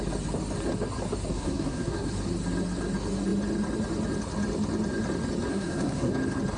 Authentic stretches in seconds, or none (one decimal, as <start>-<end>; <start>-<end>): 0.0-1.3; 2.1-5.5; 6.1-6.6